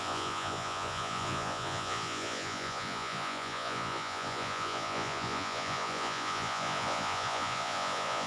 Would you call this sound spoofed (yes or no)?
yes